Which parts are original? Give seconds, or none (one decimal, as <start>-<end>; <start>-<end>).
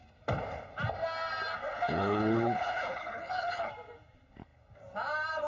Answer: 0.0-1.7; 3.7-5.5